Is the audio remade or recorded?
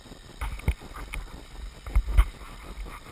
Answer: recorded